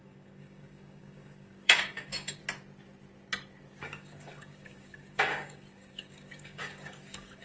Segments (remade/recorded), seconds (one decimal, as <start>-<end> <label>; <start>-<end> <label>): 0.0-2.4 remade; 2.4-3.8 recorded; 3.8-7.4 remade

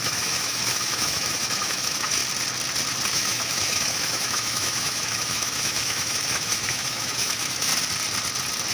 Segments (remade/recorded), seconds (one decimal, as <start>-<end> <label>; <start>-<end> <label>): 0.0-2.2 remade; 2.2-3.1 recorded; 3.1-7.7 remade; 7.7-8.7 recorded

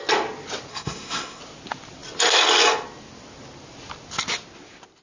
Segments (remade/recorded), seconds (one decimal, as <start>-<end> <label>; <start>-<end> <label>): 0.0-0.7 recorded; 0.7-1.4 remade; 1.4-5.0 recorded

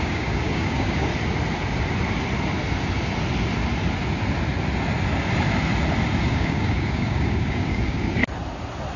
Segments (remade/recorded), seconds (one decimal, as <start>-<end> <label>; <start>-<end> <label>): 0.0-1.1 remade; 1.1-6.3 recorded; 6.3-8.2 remade; 8.2-9.0 recorded